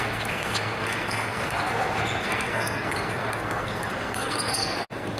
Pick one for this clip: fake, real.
fake